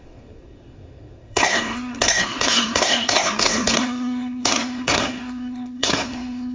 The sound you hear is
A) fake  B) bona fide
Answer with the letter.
A